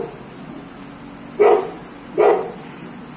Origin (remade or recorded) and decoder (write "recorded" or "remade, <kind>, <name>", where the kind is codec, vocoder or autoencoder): recorded